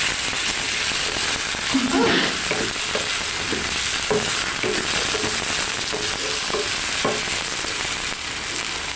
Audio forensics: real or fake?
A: real